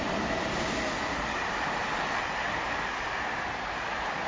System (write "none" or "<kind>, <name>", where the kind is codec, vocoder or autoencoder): none